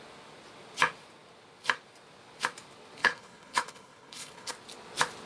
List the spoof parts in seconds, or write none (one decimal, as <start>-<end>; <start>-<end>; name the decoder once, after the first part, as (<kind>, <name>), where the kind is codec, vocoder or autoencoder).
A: 3.0-4.5 (codec, HILCodec)